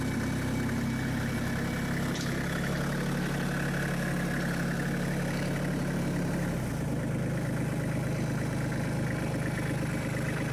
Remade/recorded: recorded